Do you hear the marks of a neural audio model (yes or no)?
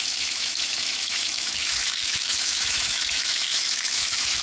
yes